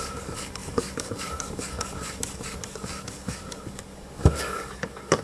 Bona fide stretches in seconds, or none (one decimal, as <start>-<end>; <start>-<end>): none